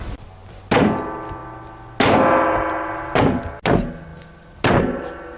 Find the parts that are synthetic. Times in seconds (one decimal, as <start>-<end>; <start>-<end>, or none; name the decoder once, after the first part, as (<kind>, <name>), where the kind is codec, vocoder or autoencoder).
none